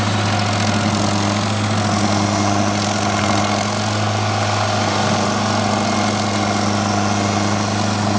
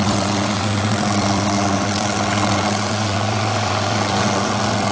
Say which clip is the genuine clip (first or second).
first